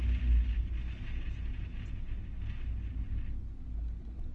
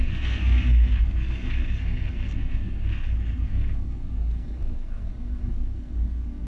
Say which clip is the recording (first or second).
first